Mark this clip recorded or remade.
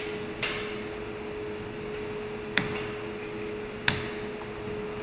recorded